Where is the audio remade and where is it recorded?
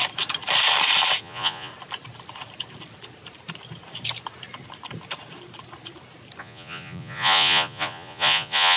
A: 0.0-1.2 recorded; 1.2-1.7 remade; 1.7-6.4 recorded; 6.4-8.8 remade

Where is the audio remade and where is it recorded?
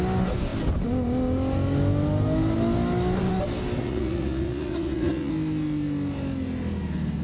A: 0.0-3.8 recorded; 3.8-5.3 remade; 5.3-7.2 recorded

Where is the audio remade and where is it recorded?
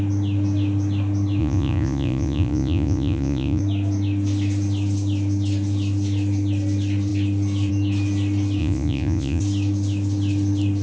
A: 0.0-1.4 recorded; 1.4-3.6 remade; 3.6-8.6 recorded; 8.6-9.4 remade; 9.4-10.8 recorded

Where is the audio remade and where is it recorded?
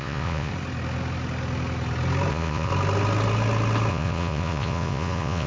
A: 0.0-0.5 remade; 0.5-2.3 recorded; 2.3-2.7 remade; 2.7-3.9 recorded; 3.9-5.5 remade